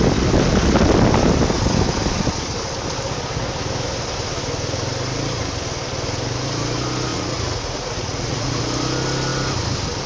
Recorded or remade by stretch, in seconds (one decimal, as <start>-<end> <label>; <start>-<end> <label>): 0.0-7.1 recorded; 7.1-8.6 remade; 8.6-10.1 recorded